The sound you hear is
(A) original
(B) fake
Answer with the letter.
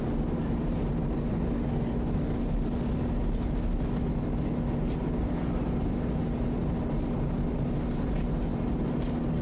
A